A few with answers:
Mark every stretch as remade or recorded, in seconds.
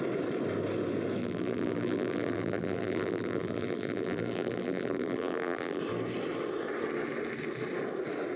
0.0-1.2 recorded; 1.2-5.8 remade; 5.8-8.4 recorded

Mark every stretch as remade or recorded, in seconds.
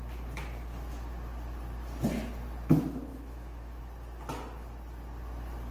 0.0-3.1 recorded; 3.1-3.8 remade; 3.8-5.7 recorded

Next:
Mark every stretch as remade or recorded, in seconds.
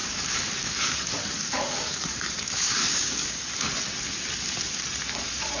0.0-3.4 remade; 3.4-5.6 recorded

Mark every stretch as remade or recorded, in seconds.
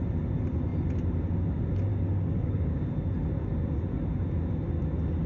0.0-1.9 recorded; 1.9-2.9 remade; 2.9-5.3 recorded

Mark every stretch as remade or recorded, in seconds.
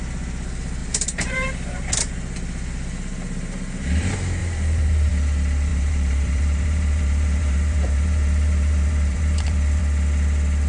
0.0-0.8 recorded; 0.8-1.5 remade; 1.5-4.4 recorded; 4.4-5.1 remade; 5.1-5.7 recorded; 5.7-9.8 remade; 9.8-10.7 recorded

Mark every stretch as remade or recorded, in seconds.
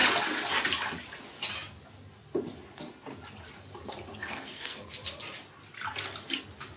0.0-4.1 recorded; 4.1-4.9 remade; 4.9-6.8 recorded